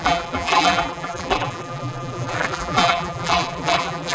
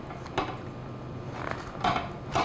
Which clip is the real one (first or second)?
second